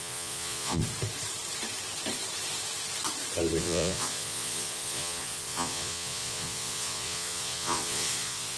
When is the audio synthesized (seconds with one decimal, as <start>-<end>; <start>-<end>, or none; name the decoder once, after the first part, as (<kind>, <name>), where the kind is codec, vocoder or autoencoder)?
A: 0.0-0.8 (vocoder, Vocos); 3.6-8.6